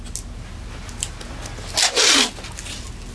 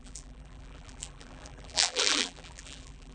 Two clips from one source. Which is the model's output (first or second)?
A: second